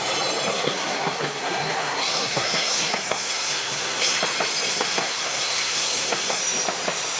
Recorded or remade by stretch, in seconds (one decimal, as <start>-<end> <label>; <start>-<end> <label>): 0.0-0.5 recorded; 0.5-4.2 remade; 4.2-4.7 recorded; 4.7-6.4 remade; 6.4-7.2 recorded